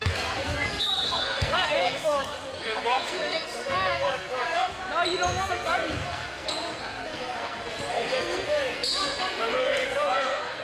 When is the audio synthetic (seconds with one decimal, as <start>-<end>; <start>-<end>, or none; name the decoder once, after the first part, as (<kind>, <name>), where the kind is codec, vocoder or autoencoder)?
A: 0.0-4.8 (codec, SNAC); 5.4-10.6